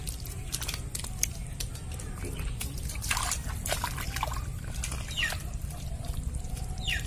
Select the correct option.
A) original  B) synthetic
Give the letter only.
A